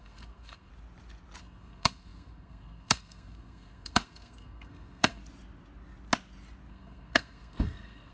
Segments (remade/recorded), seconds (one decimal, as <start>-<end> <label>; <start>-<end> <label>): 0.0-0.7 remade; 0.7-1.4 recorded; 1.4-5.2 remade; 5.2-6.7 recorded; 6.7-8.1 remade